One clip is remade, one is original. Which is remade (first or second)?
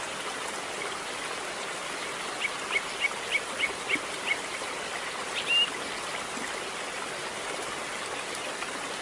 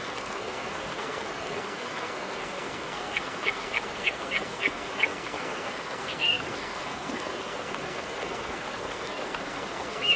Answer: second